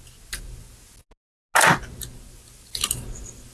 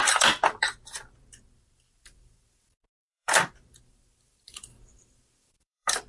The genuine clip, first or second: first